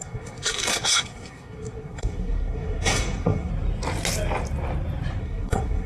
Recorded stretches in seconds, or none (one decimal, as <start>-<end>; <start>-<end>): 3.5-5.2